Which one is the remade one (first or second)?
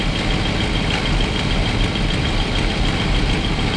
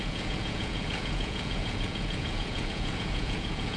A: second